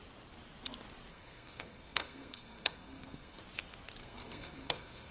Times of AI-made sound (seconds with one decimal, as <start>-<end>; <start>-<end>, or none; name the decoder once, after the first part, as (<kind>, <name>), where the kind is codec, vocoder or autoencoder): 1.1-3.4 (codec, SNAC); 4.0-5.1